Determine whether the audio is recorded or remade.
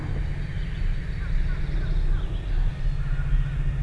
recorded